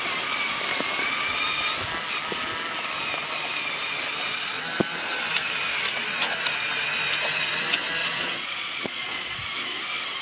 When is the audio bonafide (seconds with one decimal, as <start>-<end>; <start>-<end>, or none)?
0.0-8.0; 9.4-10.2